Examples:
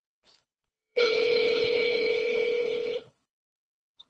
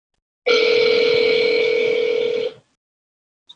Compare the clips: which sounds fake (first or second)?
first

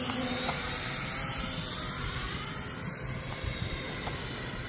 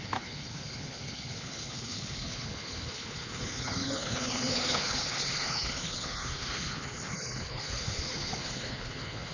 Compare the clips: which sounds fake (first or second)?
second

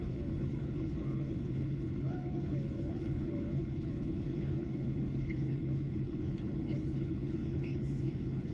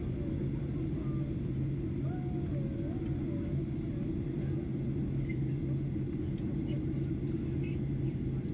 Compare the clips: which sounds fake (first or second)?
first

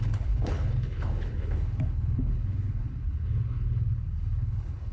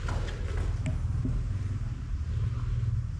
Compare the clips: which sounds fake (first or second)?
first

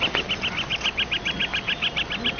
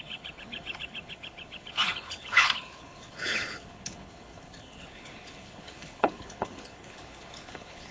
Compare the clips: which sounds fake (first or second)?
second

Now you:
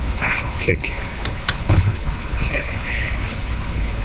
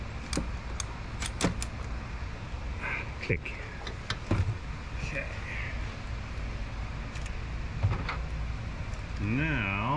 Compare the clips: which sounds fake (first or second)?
first